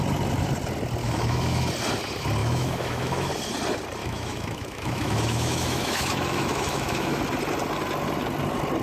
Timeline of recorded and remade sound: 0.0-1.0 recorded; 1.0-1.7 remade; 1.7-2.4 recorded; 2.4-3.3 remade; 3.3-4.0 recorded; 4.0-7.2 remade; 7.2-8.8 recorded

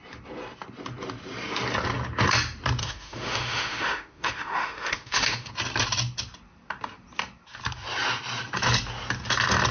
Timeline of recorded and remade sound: 0.0-2.8 recorded; 2.8-5.5 remade; 5.5-9.7 recorded

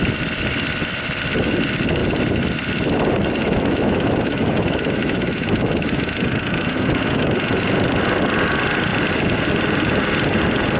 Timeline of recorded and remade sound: 0.0-3.4 recorded; 3.4-7.6 remade; 7.6-10.8 recorded

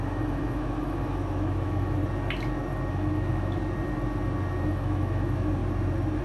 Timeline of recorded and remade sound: 0.0-2.0 remade; 2.0-2.9 recorded; 2.9-3.6 remade; 3.6-4.6 recorded; 4.6-5.6 remade; 5.6-6.2 recorded

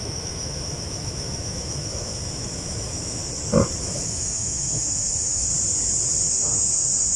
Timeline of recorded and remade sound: 0.0-3.2 remade; 3.2-3.8 recorded; 3.8-5.5 remade; 5.5-6.3 recorded; 6.3-7.2 remade

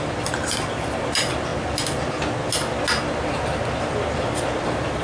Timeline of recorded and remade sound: 0.0-5.0 recorded

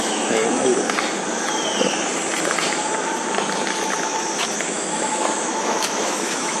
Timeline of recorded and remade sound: 0.0-0.7 remade; 0.7-4.7 recorded; 4.7-6.6 remade